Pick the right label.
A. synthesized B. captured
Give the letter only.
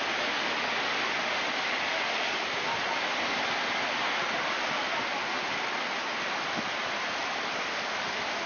A